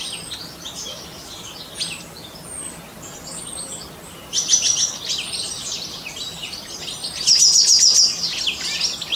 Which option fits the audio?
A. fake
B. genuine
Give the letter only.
B